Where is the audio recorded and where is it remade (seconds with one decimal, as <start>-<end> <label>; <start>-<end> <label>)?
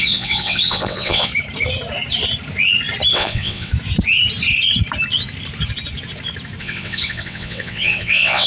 0.0-1.3 remade; 1.3-3.1 recorded; 3.1-3.7 remade; 3.7-6.6 recorded; 6.6-8.5 remade